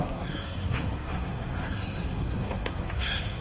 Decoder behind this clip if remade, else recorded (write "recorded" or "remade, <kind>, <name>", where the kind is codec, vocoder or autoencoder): remade, codec, SNAC